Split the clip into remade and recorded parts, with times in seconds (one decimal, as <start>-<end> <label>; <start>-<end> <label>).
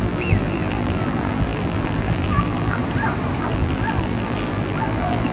0.0-2.8 remade; 2.8-3.4 recorded; 3.4-5.3 remade